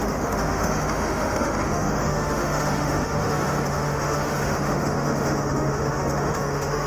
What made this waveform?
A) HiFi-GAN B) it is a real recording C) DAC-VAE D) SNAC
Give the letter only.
C